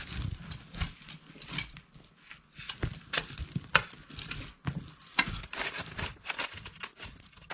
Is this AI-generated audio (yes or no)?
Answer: no